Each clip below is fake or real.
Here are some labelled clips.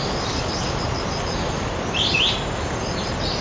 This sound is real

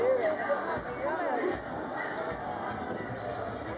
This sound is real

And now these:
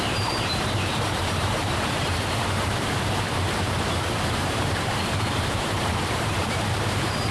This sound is fake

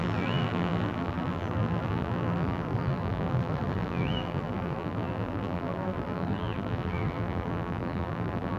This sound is fake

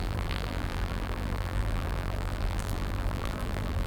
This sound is fake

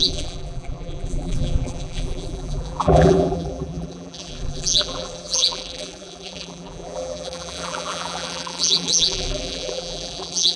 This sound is fake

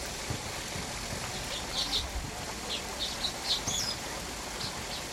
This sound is real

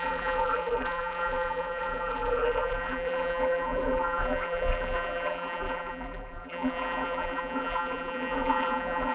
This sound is fake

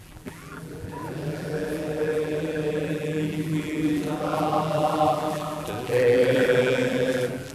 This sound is fake